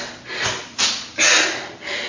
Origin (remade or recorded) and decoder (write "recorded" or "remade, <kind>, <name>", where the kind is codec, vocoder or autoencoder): recorded